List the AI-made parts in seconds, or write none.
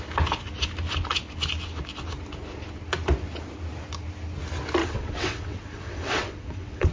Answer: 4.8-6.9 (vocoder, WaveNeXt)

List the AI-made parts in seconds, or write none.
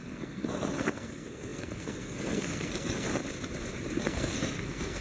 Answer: 0.0-3.1 (codec, SNAC); 4.0-5.0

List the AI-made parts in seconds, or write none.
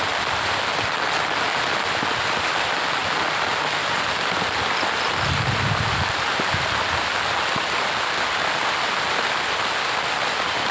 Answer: none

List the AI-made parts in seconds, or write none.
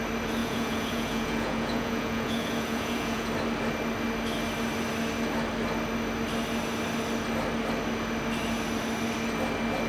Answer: 0.4-3.3 (vocoder, Vocos)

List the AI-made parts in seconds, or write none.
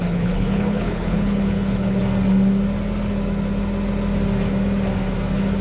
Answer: 0.0-2.0 (codec, HILCodec)